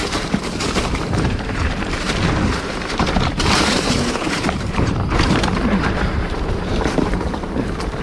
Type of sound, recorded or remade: remade